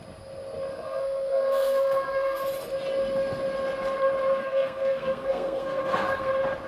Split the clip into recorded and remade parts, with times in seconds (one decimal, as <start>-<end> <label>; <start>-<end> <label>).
0.0-0.7 recorded; 0.7-2.4 remade; 2.4-4.4 recorded; 4.4-6.3 remade; 6.3-6.7 recorded